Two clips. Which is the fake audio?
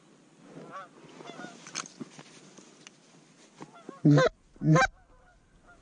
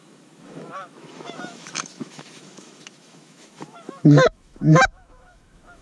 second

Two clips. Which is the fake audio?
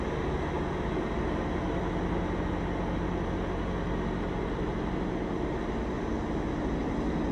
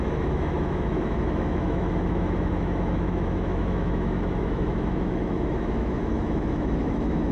second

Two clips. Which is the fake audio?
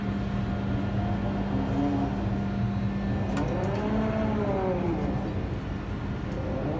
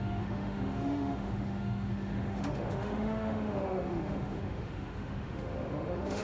second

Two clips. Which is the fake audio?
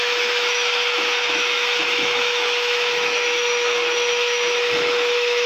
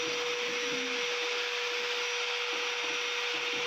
first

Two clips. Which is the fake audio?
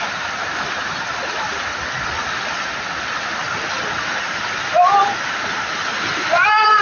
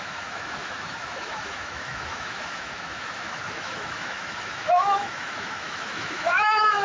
second